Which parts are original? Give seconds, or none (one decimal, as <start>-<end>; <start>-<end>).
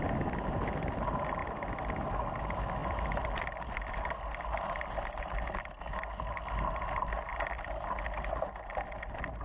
0.0-9.4